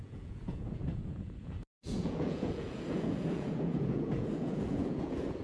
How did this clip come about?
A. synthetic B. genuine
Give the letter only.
A